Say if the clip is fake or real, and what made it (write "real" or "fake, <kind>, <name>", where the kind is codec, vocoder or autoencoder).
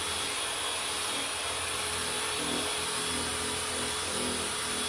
real